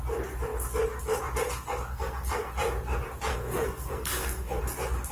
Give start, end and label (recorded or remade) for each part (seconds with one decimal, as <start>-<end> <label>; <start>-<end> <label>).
0.0-1.9 recorded; 1.9-2.5 remade; 2.5-3.3 recorded; 3.3-4.6 remade; 4.6-5.1 recorded